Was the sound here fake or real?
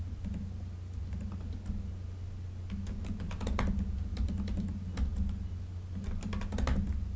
real